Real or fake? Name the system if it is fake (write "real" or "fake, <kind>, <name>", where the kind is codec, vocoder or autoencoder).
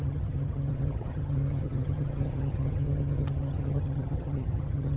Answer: fake, vocoder, HiFi-GAN